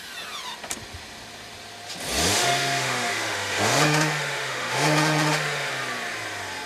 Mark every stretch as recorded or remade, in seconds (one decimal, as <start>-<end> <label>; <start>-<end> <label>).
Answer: 0.0-2.3 recorded; 2.3-5.7 remade; 5.7-6.7 recorded